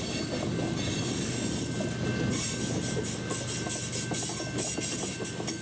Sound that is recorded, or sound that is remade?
recorded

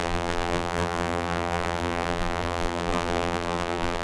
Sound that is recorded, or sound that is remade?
remade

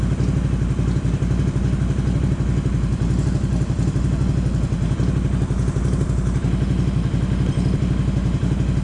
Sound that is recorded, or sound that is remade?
recorded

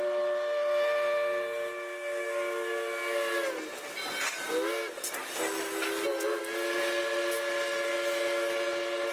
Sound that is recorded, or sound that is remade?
recorded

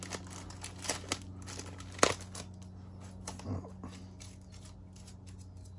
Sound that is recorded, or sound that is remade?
recorded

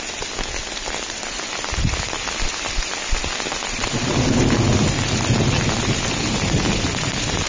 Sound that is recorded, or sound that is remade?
recorded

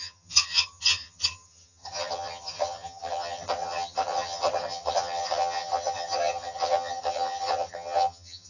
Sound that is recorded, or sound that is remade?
remade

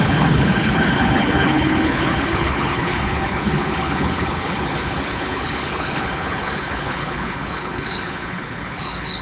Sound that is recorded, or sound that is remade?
remade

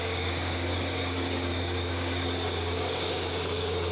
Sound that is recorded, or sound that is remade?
remade